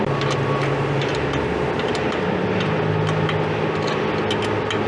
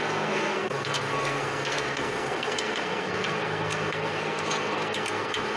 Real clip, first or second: first